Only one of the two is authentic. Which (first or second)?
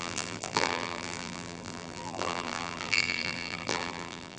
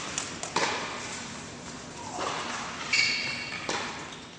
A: second